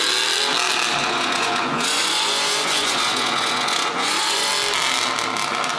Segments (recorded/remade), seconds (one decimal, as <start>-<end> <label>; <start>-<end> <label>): 0.0-1.0 recorded; 1.0-4.5 remade; 4.5-5.8 recorded